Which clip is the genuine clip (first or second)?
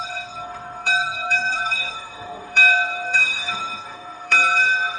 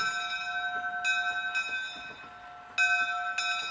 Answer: second